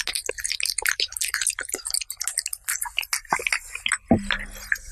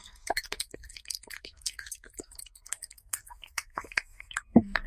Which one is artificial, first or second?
second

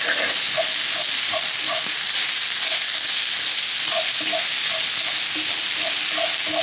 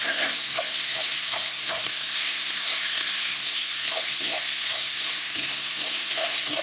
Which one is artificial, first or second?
second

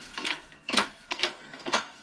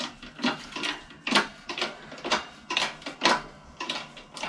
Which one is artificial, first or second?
first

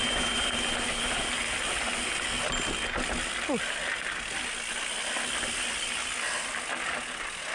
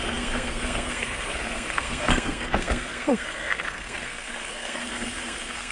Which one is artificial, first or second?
second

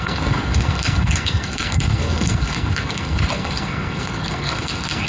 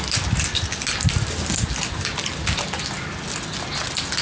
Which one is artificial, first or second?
first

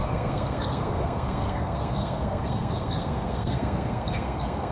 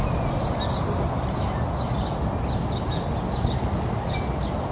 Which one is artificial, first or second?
first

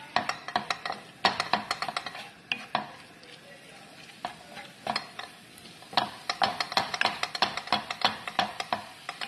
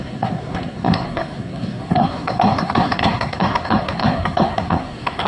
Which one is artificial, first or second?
second